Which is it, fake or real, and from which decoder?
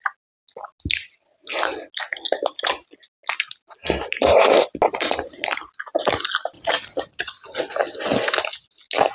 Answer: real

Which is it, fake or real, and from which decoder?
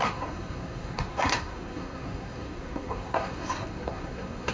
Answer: fake, codec, SNAC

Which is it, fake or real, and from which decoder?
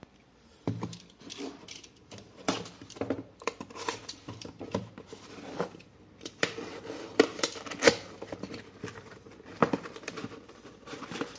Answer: fake, vocoder, BigVGAN v2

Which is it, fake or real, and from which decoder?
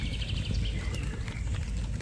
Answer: real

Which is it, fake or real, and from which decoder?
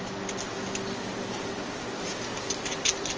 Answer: real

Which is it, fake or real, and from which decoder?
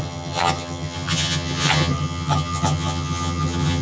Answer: fake, vocoder, HiFi-GAN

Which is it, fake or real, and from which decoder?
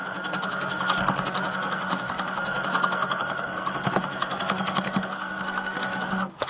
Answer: fake, codec, SNAC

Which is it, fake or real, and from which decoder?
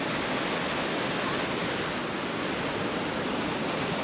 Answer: real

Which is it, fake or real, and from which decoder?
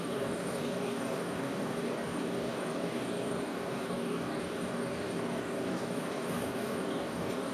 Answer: fake, codec, DAC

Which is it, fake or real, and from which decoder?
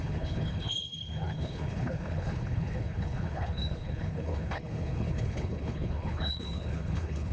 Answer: fake, codec, HILCodec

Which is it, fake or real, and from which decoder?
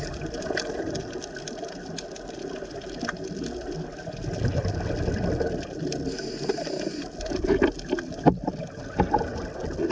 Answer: real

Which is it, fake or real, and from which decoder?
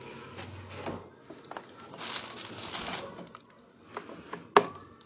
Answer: real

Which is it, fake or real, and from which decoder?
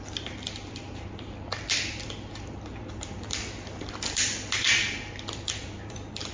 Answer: real